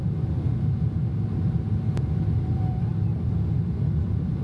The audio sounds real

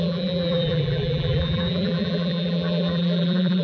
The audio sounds fake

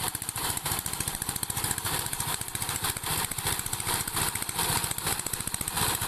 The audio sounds fake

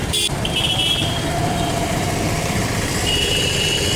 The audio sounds fake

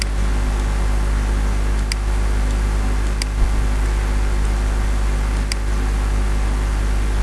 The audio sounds real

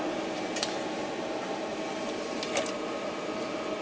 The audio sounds fake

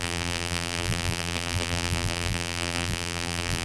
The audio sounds fake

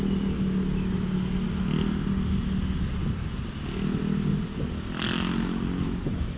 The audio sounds real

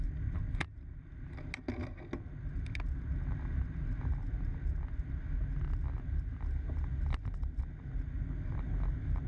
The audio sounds real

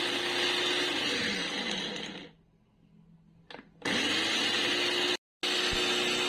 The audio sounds real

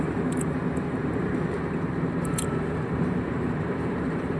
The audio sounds fake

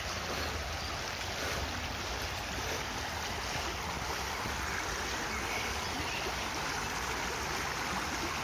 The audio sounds real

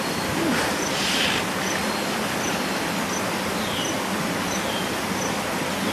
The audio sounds real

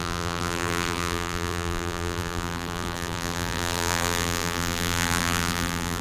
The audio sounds fake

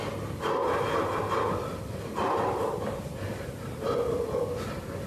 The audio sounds real